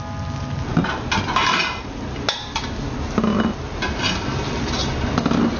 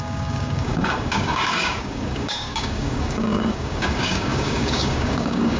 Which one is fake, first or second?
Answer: second